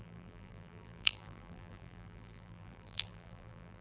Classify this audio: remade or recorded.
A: remade